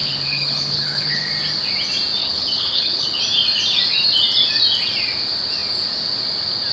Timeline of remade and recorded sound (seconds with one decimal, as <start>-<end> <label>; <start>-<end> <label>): 0.0-1.3 remade; 1.3-2.2 recorded; 2.2-3.2 remade; 3.2-6.7 recorded